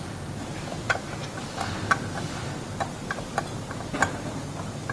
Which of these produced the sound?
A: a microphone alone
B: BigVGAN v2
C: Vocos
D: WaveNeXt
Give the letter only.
A